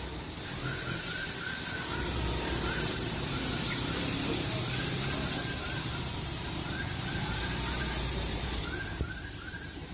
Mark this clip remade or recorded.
remade